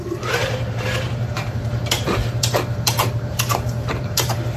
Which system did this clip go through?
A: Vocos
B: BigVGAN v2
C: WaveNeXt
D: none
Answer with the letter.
B